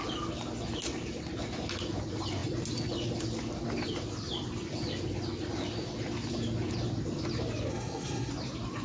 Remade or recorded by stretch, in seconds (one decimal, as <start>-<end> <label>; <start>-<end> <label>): 0.0-7.7 recorded; 7.7-8.3 remade; 8.3-8.8 recorded